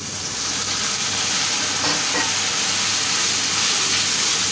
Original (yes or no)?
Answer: yes